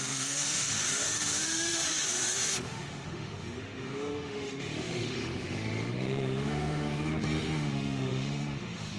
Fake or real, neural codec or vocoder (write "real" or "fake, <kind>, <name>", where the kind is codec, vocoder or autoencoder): fake, autoencoder, DAC-VAE